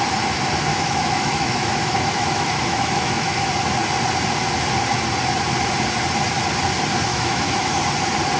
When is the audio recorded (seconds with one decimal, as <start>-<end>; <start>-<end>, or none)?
0.0-0.7; 3.5-7.1; 7.8-8.4